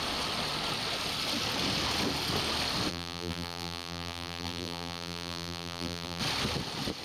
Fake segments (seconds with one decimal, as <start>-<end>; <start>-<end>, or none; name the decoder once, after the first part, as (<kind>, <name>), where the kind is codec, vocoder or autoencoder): 2.9-6.2 (vocoder, BigVGAN v2)